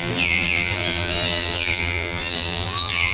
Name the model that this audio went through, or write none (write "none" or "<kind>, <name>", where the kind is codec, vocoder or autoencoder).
vocoder, BigVGAN v2